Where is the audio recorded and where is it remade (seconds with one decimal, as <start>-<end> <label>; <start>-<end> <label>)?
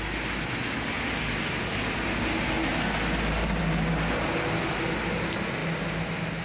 0.0-6.4 recorded